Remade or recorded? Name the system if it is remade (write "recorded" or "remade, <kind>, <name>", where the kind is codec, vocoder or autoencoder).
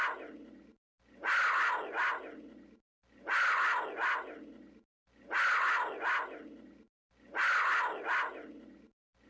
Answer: recorded